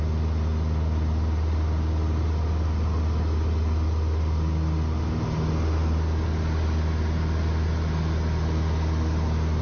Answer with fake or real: real